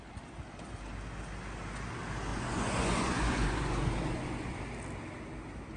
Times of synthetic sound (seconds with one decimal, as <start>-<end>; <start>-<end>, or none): 2.3-4.6